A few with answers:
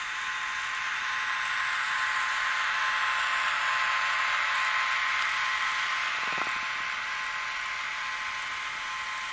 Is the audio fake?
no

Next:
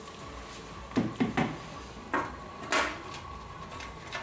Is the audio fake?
no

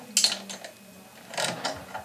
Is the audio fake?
no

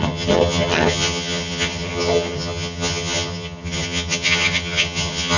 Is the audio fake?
yes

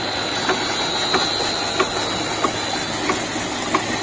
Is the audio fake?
no